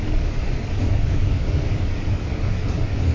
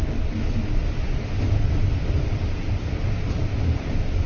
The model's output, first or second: first